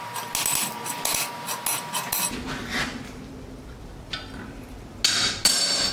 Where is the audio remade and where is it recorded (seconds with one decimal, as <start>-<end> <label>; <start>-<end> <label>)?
0.0-5.9 recorded